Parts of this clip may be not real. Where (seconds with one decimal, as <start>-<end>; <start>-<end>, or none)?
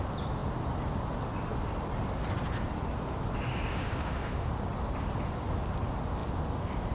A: 3.7-4.5